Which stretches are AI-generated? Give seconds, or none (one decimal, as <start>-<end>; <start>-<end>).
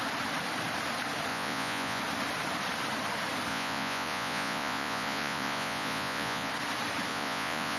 1.3-2.0; 3.5-6.5; 7.1-7.8